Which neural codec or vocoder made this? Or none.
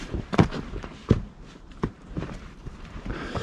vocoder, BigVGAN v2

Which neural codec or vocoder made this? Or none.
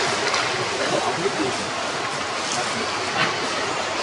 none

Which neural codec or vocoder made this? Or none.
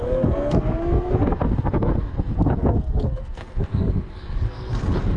codec, SNAC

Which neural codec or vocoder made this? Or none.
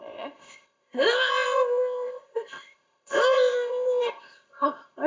codec, ZipCodec